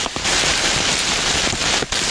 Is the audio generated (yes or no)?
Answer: yes